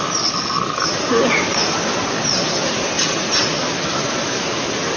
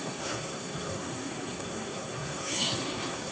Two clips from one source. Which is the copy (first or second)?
second